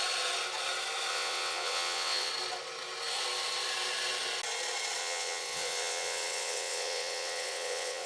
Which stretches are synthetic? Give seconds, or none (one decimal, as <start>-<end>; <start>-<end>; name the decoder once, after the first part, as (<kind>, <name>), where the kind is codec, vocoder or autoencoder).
1.1-2.3 (vocoder, WaveNeXt); 5.0-8.1